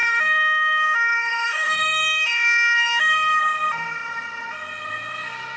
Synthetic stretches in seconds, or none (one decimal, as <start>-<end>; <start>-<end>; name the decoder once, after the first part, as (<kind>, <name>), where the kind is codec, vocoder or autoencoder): 0.0-3.4 (autoencoder, DAC-VAE)